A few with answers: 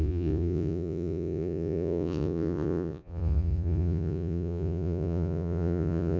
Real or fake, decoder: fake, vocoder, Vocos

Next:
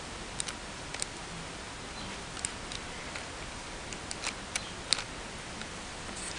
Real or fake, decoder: real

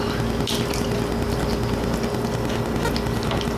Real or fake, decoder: real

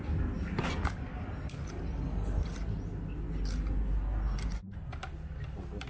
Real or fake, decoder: real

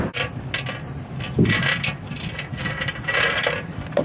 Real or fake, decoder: fake, vocoder, BigVGAN v2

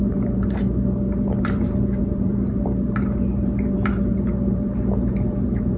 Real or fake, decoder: fake, vocoder, BigVGAN v2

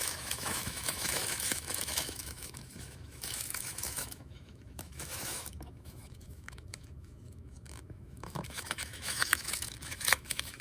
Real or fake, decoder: fake, autoencoder, DAC-VAE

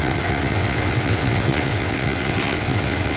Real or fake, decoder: fake, vocoder, WaveNeXt